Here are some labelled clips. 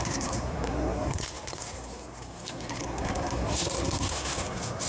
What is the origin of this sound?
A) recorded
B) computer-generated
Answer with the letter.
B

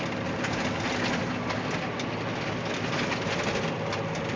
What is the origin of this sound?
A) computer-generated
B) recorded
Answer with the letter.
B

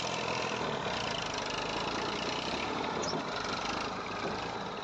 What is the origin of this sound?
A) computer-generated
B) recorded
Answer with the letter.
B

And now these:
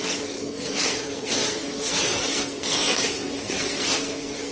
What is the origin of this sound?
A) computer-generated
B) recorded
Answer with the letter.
A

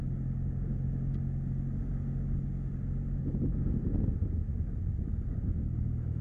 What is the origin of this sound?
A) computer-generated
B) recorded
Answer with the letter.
B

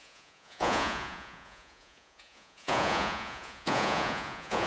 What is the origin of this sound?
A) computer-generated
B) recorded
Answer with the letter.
A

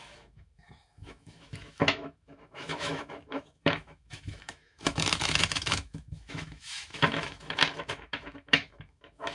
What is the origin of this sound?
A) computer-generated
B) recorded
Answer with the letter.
A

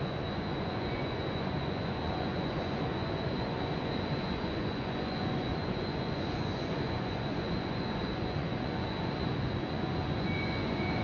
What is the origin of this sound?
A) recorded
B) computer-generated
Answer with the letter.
B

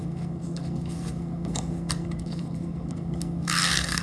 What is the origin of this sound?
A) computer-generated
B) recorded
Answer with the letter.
A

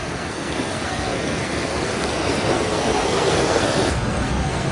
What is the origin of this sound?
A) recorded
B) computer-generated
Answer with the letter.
B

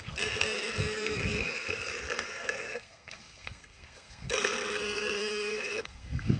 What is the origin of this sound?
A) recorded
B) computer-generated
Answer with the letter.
B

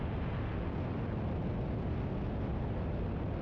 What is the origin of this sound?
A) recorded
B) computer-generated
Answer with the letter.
A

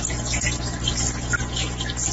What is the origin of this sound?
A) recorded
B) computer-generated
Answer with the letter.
A